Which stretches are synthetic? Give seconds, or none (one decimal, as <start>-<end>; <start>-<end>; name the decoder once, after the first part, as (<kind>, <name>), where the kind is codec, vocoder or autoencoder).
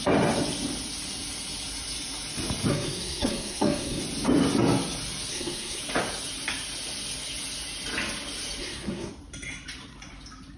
2.7-4.0 (codec, SNAC); 5.3-5.8; 8.6-9.1